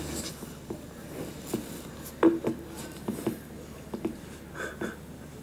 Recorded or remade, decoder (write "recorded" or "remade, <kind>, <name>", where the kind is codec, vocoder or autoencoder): recorded